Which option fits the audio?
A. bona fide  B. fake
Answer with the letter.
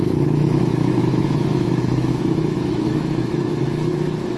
B